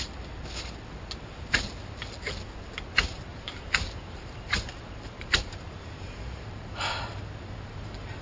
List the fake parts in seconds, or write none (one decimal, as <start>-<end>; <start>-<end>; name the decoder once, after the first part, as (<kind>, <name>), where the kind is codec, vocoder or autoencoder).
3.3-8.2 (vocoder, BigVGAN v2)